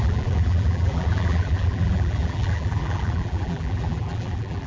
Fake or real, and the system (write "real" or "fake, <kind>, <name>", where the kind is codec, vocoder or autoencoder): fake, vocoder, BigVGAN v2